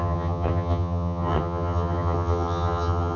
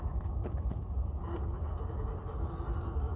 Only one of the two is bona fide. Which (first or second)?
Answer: second